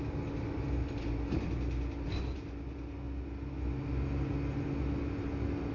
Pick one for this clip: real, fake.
real